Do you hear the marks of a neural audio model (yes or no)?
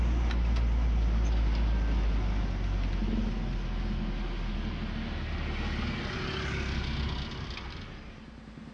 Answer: no